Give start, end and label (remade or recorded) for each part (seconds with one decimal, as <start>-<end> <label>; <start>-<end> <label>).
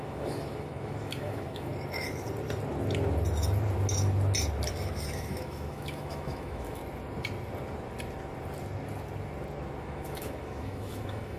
0.0-1.7 remade; 1.7-4.7 recorded; 4.7-6.8 remade; 6.8-9.8 recorded; 9.8-11.4 remade